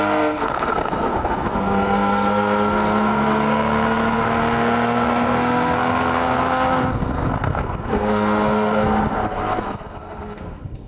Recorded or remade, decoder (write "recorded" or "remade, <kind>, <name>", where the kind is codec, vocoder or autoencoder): remade, codec, SNAC